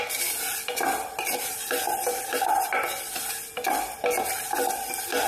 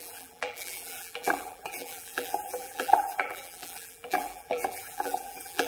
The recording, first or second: first